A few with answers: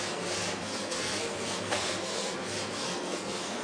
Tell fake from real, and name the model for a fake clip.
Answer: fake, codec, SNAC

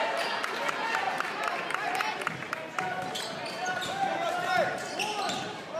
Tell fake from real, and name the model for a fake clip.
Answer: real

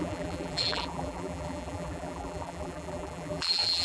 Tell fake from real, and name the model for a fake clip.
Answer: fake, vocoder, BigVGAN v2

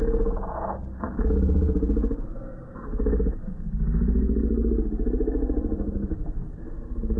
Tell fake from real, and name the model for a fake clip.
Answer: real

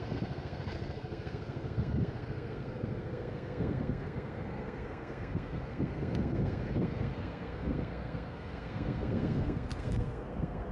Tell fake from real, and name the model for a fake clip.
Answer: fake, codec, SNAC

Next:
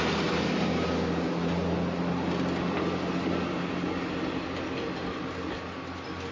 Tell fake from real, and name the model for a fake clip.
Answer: real